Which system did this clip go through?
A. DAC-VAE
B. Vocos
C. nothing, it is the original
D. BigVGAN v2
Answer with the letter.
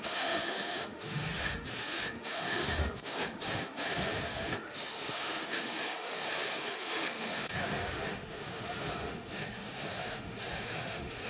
A